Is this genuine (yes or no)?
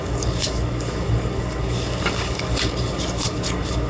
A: no